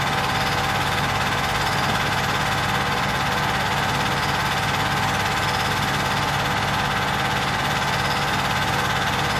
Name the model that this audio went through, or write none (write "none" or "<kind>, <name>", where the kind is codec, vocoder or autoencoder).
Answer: none